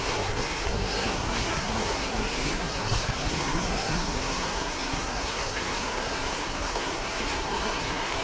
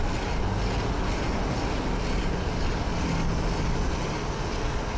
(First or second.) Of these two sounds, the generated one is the first